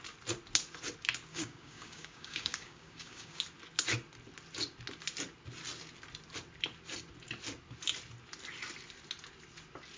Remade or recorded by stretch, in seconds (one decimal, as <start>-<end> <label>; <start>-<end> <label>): 0.0-1.3 recorded; 1.3-3.4 remade; 3.4-10.0 recorded